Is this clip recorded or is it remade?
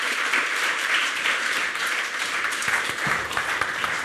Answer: remade